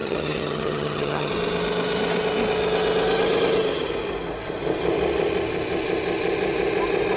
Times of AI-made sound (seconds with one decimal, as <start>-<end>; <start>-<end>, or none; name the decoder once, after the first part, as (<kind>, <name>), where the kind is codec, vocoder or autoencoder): 0.0-1.3 (vocoder, HiFi-GAN)